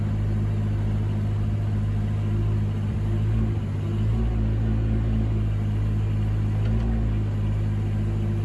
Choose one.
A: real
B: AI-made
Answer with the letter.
A